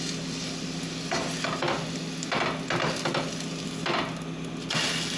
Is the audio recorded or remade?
recorded